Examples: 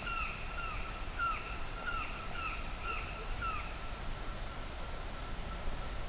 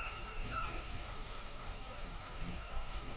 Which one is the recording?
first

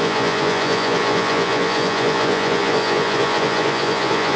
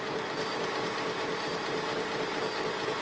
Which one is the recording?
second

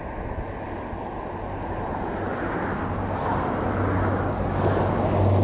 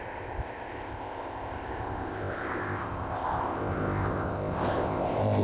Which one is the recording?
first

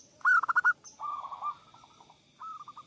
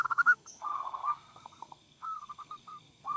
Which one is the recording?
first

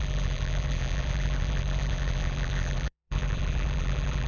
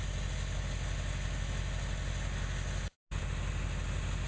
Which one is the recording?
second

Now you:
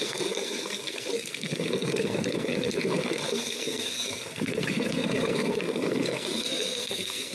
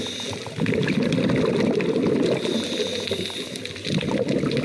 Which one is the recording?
second